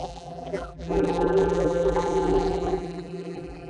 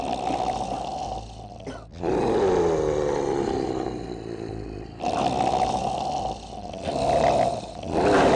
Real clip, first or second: second